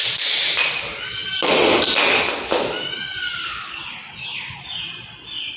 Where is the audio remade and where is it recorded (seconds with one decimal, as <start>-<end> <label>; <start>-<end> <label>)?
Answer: 0.0-5.6 recorded